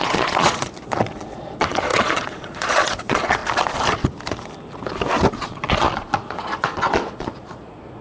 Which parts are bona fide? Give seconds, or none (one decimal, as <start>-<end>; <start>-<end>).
3.4-5.3